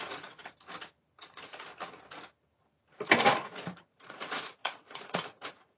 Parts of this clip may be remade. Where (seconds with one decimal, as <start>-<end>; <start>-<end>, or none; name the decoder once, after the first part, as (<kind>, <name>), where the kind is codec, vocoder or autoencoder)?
0.0-0.4 (vocoder, Vocos); 1.2-1.7; 3.2-5.8